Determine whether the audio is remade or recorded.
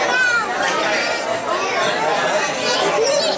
recorded